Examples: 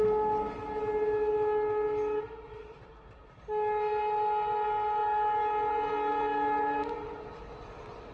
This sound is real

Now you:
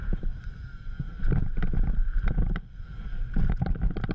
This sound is real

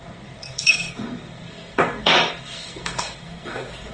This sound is fake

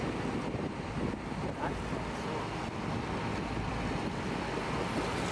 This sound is real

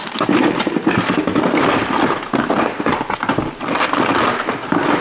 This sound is real